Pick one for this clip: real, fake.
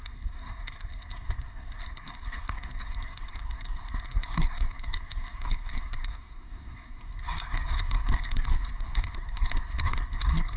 fake